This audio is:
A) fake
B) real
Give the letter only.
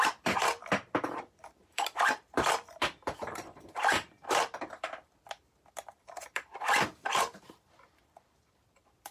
A